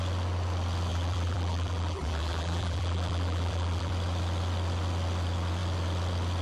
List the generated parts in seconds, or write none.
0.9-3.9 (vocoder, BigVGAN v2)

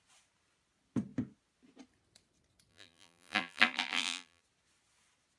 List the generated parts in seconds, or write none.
2.7-4.4 (vocoder, BigVGAN v2)

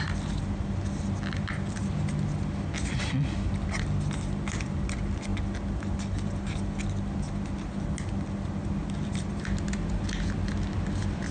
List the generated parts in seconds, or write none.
none

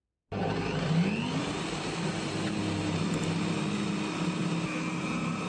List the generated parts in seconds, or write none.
1.4-3.2 (vocoder, BigVGAN v2)